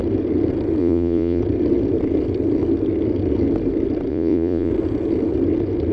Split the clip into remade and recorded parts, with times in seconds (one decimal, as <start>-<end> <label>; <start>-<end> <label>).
0.0-0.8 recorded; 0.8-1.4 remade; 1.4-4.1 recorded; 4.1-4.7 remade; 4.7-5.9 recorded